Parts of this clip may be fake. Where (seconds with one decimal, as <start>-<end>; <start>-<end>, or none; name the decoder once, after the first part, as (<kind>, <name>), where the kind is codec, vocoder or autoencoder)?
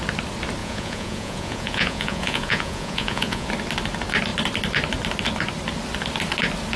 0.6-3.5 (vocoder, Vocos)